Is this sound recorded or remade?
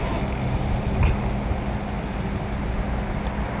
recorded